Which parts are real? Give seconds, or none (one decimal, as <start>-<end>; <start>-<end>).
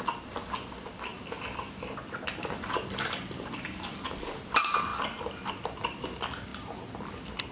1.1-2.3; 6.5-7.0